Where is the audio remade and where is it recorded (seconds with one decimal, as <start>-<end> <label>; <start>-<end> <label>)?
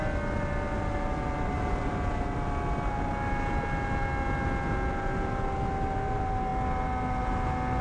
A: 0.0-7.8 recorded